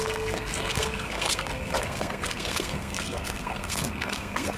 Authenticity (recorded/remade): remade